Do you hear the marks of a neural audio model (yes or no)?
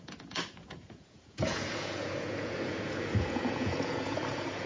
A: yes